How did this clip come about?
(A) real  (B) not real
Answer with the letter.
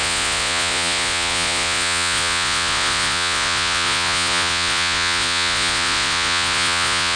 B